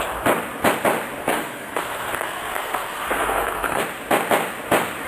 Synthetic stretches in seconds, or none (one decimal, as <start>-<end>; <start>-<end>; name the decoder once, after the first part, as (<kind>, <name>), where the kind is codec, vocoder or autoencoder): 1.2-3.8 (codec, SNAC)